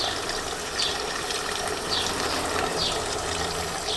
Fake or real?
real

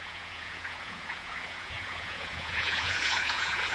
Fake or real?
fake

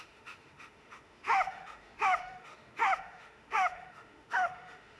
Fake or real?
fake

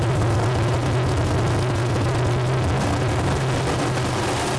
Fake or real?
real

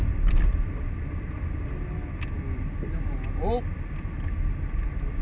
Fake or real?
real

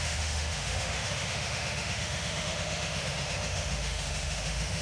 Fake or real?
fake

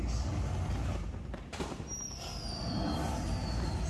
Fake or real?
real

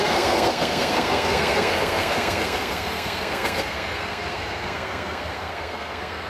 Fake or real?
fake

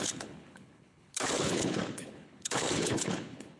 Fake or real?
fake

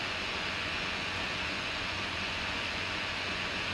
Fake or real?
fake